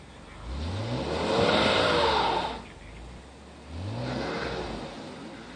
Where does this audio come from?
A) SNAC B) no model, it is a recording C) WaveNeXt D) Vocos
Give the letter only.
B